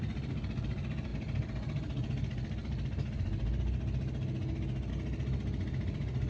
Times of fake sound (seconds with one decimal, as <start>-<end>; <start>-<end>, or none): none

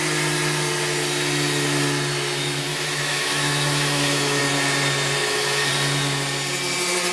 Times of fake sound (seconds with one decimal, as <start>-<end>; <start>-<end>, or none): 2.7-4.4; 5.2-5.7

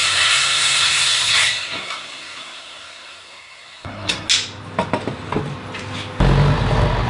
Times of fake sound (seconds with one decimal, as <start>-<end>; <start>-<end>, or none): 0.0-4.3

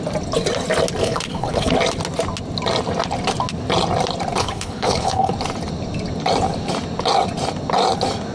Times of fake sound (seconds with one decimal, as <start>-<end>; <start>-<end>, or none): 1.0-1.7; 4.4-5.3

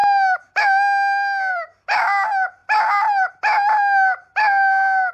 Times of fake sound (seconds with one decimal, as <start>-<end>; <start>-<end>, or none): none

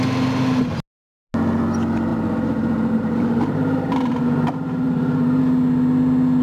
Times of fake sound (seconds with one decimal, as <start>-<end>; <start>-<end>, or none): 2.1-5.4